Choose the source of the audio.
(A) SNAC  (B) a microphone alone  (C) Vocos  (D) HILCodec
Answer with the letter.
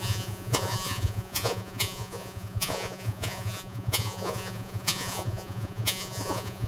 C